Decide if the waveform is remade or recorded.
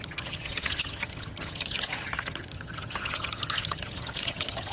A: remade